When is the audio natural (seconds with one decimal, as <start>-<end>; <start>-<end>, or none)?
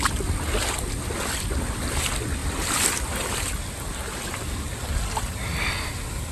0.0-6.3